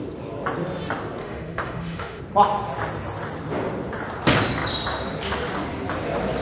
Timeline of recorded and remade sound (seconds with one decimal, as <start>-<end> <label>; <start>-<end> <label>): 0.0-1.2 recorded; 1.2-2.2 remade; 2.2-6.4 recorded